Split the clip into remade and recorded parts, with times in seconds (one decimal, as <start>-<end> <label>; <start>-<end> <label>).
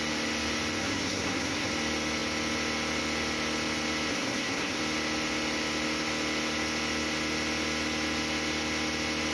0.0-0.8 recorded; 0.8-1.7 remade; 1.7-4.1 recorded; 4.1-4.8 remade; 4.8-9.3 recorded